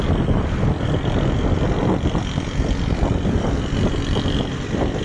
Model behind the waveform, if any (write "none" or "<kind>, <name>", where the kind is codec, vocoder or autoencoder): none